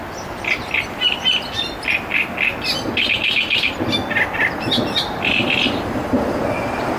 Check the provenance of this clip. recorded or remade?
recorded